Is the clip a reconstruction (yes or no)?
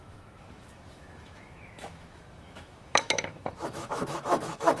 yes